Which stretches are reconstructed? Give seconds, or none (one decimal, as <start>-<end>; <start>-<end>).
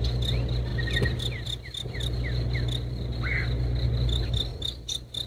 0.7-3.9; 4.5-5.3